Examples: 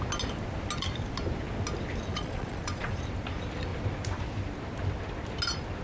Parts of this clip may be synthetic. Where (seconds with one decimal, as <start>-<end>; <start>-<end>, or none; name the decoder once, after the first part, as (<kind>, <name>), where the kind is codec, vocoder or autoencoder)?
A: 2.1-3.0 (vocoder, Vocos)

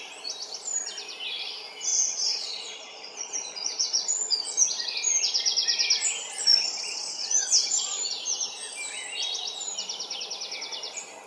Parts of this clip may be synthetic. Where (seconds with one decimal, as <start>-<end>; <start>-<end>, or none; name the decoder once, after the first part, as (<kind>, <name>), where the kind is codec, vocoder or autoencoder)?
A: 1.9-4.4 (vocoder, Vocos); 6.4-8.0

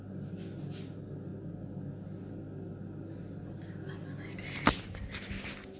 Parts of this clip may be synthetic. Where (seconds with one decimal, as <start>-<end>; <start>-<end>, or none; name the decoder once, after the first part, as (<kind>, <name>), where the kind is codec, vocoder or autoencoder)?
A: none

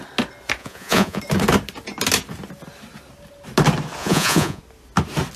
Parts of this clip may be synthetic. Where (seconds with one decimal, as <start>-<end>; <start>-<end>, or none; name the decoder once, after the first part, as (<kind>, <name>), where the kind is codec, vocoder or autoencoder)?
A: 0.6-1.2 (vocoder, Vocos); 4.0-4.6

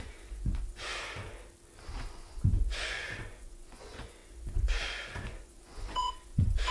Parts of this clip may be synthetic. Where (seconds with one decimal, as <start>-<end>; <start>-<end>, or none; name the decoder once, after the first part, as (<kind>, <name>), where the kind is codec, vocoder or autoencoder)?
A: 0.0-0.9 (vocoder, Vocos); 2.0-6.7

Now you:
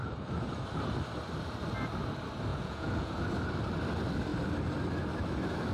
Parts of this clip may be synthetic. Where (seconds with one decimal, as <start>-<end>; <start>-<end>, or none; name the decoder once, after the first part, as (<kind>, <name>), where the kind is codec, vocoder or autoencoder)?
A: 2.5-3.1 (vocoder, Vocos)